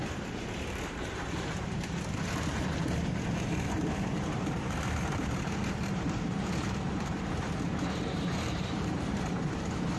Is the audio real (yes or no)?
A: no